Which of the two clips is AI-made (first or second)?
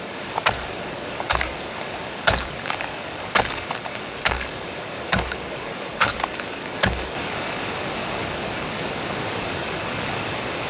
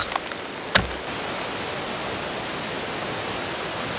first